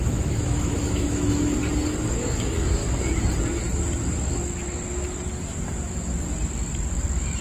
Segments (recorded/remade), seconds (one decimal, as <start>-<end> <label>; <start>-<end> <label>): 0.0-1.6 remade; 1.6-2.1 recorded; 2.1-2.8 remade; 2.8-7.4 recorded